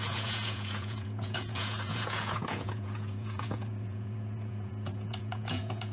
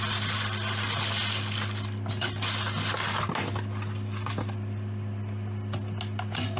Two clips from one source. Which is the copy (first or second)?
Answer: first